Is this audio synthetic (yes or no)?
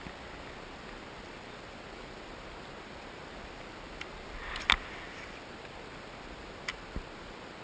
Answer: no